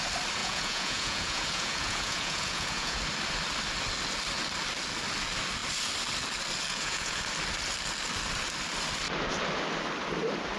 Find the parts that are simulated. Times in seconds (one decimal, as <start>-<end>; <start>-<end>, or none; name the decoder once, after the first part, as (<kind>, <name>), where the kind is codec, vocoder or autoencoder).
0.4-3.0 (vocoder, Vocos); 6.7-7.2